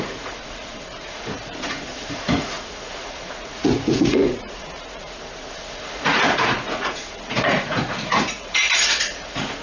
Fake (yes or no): yes